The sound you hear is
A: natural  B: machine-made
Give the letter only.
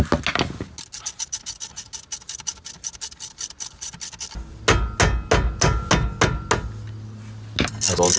A